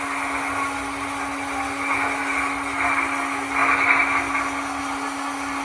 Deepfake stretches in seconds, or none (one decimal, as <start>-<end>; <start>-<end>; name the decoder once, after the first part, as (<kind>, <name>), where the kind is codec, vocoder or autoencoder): none